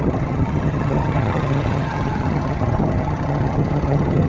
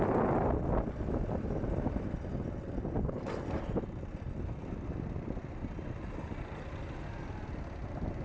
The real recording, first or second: second